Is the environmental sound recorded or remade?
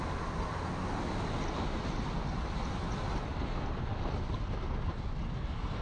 recorded